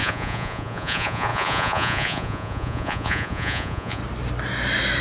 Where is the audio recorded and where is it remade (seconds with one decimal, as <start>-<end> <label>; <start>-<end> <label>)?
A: 0.0-4.0 remade; 4.0-5.0 recorded